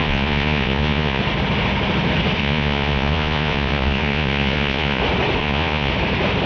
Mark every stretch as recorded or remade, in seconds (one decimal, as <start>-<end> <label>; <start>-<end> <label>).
0.0-1.2 remade; 1.2-2.4 recorded; 2.4-5.0 remade; 5.0-5.4 recorded; 5.4-5.9 remade; 5.9-6.5 recorded